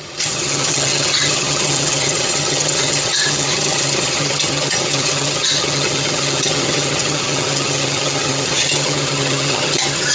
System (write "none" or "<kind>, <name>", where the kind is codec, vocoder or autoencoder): vocoder, HiFi-GAN